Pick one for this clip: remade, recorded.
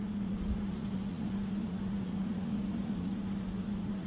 remade